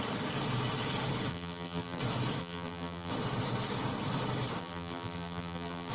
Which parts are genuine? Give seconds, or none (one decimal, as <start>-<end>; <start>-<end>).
0.0-1.3; 2.0-2.4; 3.1-4.6